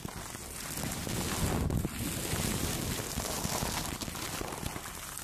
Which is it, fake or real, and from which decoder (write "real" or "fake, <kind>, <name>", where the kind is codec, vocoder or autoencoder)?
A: real